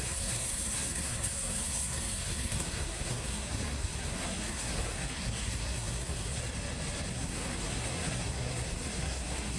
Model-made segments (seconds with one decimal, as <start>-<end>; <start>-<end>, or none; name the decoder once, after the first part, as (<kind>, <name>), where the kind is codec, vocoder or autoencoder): 0.0-6.4 (codec, SNAC); 7.1-9.6